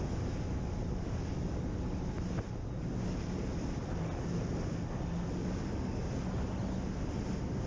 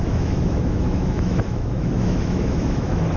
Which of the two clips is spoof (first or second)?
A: second